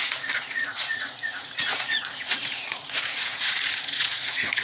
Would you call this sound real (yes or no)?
no